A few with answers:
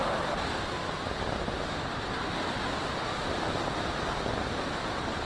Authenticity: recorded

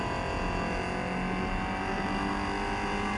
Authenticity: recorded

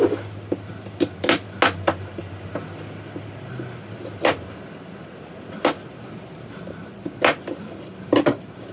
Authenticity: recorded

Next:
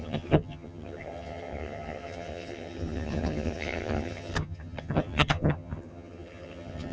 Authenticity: remade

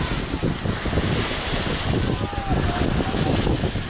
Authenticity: recorded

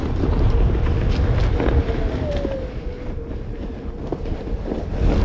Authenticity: recorded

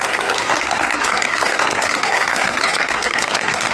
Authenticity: remade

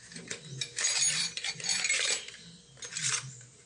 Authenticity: recorded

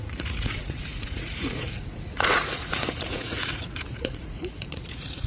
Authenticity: remade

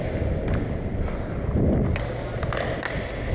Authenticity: recorded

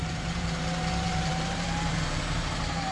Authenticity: remade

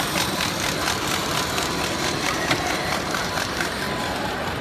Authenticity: remade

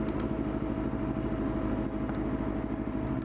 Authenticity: recorded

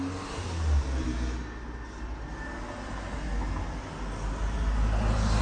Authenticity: recorded